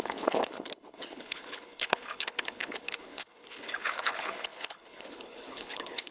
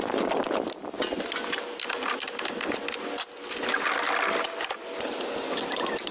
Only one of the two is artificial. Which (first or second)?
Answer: first